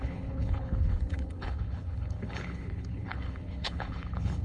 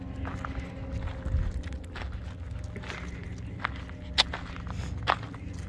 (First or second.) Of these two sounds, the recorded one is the second